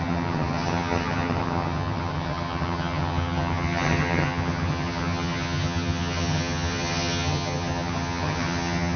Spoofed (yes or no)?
yes